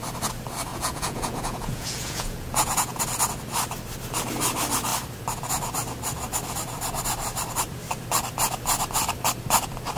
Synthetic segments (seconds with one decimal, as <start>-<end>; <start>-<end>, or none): 0.7-3.0